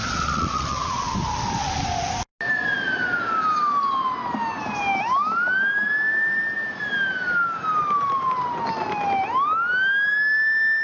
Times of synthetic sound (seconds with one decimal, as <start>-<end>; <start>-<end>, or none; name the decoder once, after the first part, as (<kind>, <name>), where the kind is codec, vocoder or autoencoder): 0.0-1.0 (vocoder, Vocos)